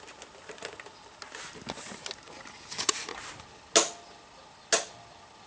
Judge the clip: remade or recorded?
recorded